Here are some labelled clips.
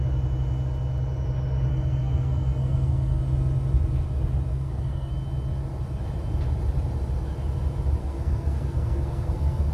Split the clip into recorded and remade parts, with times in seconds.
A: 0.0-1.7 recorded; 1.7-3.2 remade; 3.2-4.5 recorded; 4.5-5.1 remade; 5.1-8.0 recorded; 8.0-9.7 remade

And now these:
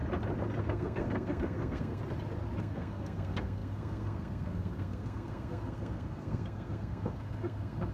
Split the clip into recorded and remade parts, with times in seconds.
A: 0.0-0.6 recorded; 0.6-2.0 remade; 2.0-2.6 recorded; 2.6-7.9 remade

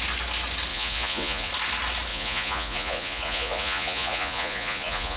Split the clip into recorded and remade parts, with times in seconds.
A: 0.0-0.7 recorded; 0.7-1.5 remade; 1.5-2.1 recorded; 2.1-5.2 remade

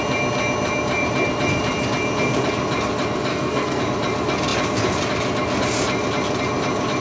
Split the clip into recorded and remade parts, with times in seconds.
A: 0.0-3.3 recorded; 3.3-3.8 remade; 3.8-7.0 recorded

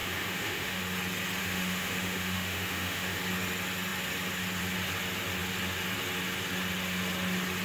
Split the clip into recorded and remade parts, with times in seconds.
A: 0.0-0.8 remade; 0.8-1.4 recorded; 1.4-3.2 remade; 3.2-7.6 recorded

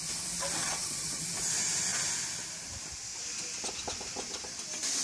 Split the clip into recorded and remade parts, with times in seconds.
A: 0.0-0.6 recorded; 0.6-1.2 remade; 1.2-5.0 recorded